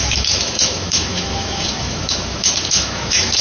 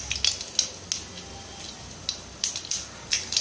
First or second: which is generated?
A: first